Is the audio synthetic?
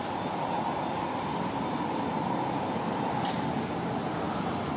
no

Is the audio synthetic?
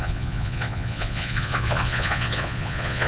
yes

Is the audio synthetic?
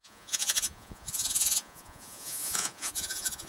yes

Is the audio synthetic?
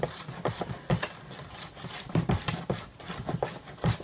no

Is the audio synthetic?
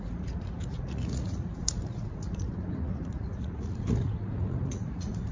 yes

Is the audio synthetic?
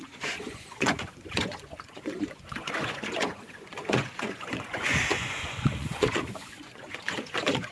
yes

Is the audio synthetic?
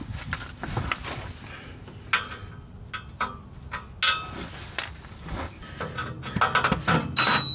no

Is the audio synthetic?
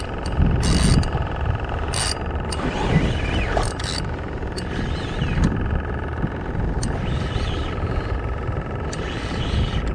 no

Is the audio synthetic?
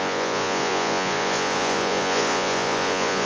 yes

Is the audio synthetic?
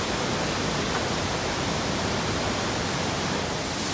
no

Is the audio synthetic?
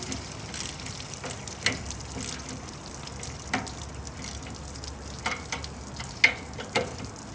no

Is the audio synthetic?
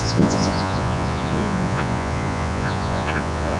yes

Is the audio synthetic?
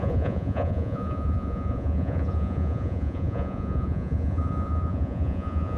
yes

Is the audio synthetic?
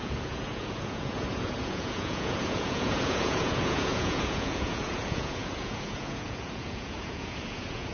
yes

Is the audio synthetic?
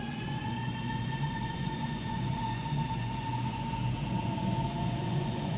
yes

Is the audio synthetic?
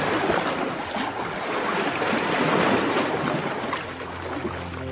no